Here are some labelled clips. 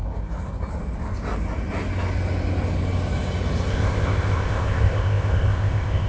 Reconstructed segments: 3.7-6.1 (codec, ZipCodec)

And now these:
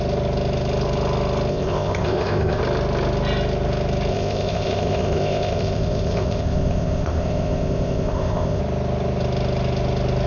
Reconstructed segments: 1.5-2.6 (codec, ZipCodec); 4.1-8.6